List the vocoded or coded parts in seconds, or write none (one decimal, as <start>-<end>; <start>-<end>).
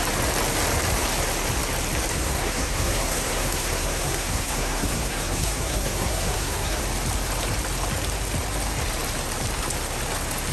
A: 2.1-6.8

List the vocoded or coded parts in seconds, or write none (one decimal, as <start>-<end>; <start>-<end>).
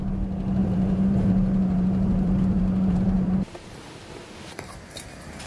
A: 0.6-3.9